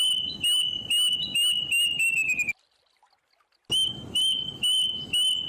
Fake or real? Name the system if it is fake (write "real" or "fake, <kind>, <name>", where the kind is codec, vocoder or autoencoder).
real